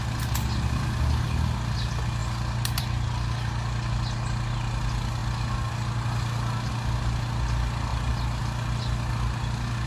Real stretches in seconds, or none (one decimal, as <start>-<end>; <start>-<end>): 0.0-9.9